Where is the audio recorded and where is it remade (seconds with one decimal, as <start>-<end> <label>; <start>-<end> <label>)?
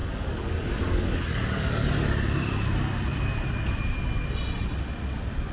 0.0-1.9 remade; 1.9-5.5 recorded